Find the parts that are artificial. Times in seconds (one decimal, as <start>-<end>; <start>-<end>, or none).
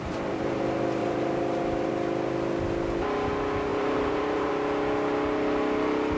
1.0-1.9; 3.7-4.5